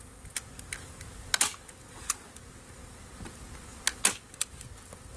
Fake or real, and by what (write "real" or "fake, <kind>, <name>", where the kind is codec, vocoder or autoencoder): real